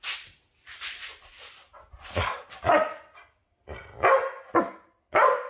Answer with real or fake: real